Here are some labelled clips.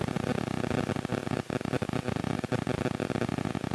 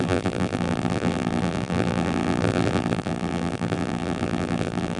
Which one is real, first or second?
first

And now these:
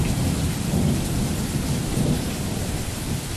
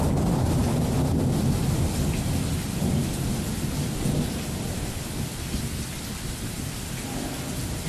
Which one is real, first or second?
second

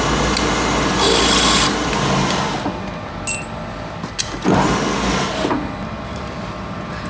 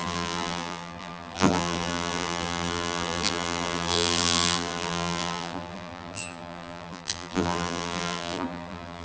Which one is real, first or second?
first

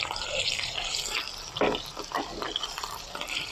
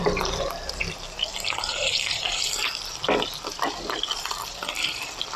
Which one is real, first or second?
first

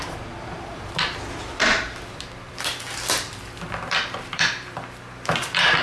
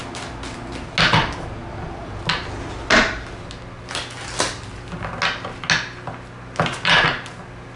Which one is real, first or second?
second